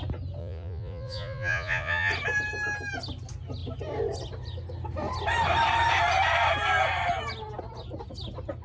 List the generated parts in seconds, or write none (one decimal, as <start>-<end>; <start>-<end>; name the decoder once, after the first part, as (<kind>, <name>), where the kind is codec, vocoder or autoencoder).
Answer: 0.4-2.1 (vocoder, Vocos)